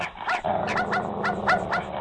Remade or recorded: recorded